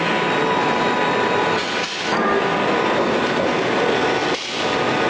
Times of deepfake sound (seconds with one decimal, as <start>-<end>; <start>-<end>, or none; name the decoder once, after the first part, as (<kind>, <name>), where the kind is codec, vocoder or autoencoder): none